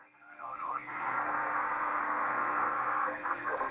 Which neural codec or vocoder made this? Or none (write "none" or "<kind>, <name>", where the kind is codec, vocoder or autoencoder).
codec, SNAC